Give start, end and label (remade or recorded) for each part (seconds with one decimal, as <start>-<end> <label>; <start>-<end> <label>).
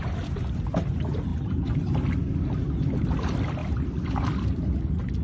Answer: 0.0-5.2 recorded